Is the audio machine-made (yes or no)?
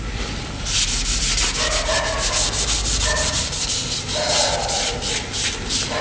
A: no